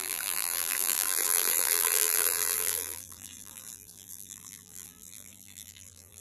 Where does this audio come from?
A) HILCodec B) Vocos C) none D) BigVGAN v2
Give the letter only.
D